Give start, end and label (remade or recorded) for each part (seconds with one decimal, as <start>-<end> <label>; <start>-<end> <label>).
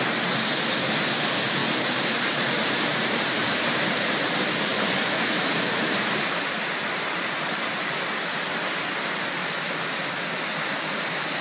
0.0-1.6 recorded; 1.6-4.0 remade; 4.0-4.7 recorded; 4.7-8.5 remade; 8.5-11.4 recorded